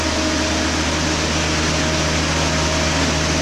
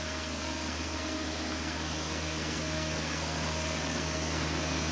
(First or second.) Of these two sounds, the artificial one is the second